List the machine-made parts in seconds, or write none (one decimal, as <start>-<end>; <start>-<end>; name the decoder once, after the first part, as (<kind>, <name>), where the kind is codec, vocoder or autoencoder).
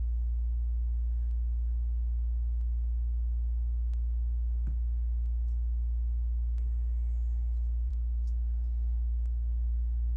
7.9-10.2 (codec, SNAC)